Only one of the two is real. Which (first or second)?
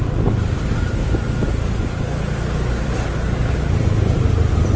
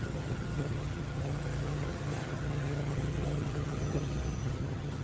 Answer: first